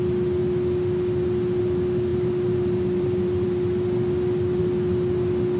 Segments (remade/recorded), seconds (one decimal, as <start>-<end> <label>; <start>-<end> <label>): 0.0-2.1 recorded; 2.1-4.6 remade; 4.6-5.6 recorded